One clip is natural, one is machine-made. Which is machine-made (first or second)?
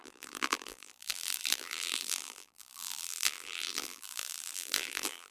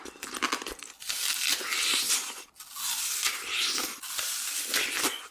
first